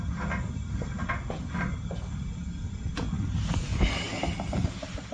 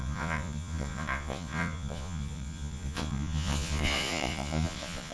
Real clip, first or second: first